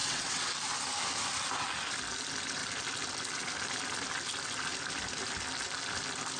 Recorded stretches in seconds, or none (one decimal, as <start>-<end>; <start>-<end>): 0.5-6.4